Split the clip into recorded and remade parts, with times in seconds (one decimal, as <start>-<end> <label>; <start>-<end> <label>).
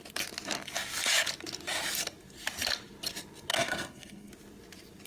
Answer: 0.0-3.5 recorded; 3.5-4.3 remade; 4.3-5.1 recorded